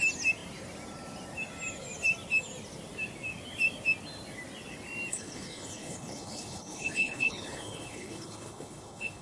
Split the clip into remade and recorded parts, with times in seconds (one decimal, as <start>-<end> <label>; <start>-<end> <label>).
0.0-5.1 recorded; 5.1-9.2 remade